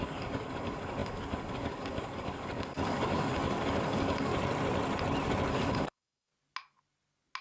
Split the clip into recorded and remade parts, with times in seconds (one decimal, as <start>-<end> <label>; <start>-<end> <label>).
0.0-4.3 remade; 4.3-5.5 recorded; 5.5-6.3 remade; 6.3-7.4 recorded